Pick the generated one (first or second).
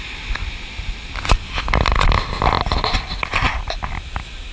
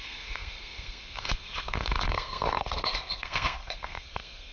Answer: second